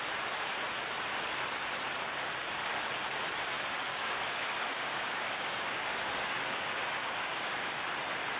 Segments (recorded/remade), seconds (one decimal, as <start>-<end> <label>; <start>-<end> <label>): 0.0-3.9 recorded; 3.9-7.8 remade; 7.8-8.4 recorded